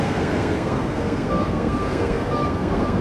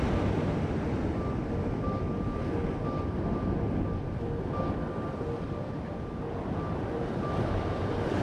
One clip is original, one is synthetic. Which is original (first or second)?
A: second